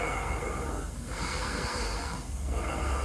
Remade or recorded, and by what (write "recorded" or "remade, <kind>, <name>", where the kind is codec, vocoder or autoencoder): remade, codec, SNAC